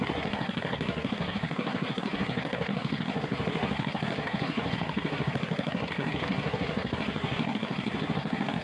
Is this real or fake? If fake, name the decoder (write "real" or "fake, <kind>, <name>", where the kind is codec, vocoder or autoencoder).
fake, codec, SNAC